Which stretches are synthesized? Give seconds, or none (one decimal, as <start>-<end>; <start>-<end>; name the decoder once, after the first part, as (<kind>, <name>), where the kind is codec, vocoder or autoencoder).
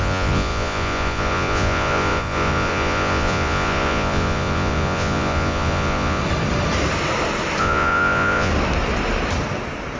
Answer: 0.0-6.2 (vocoder, Vocos); 7.6-8.5